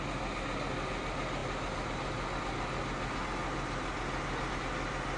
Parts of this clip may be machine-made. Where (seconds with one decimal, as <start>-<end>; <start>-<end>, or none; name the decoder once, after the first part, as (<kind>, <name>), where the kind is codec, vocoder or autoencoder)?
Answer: none